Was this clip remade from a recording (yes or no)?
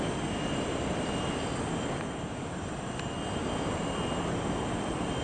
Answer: no